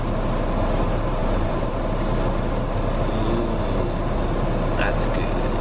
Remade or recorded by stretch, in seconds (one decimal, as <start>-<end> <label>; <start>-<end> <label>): 0.0-1.2 recorded; 1.2-1.7 remade; 1.7-5.6 recorded